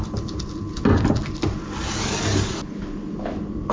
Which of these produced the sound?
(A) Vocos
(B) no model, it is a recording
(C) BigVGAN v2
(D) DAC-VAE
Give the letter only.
B